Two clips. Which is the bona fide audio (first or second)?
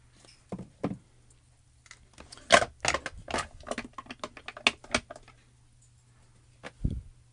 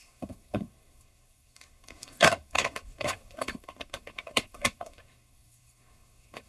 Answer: first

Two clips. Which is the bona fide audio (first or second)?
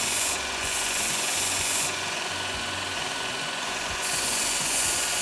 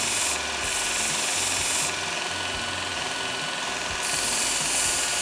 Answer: second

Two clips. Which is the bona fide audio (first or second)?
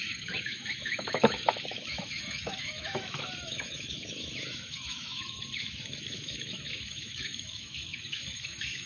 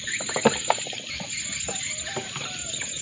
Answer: second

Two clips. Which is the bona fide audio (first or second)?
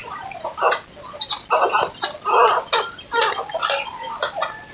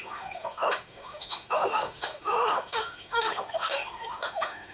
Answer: first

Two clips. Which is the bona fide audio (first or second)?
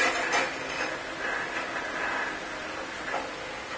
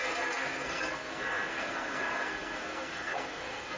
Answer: first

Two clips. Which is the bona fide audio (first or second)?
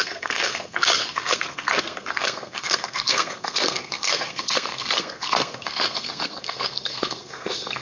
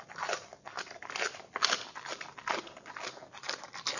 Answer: second